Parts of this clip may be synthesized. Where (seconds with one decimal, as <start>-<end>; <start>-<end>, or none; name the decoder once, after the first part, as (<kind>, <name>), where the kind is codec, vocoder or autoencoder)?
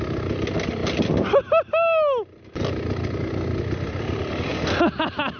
none